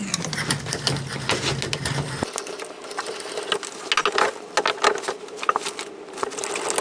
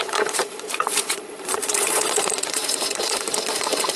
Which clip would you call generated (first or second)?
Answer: second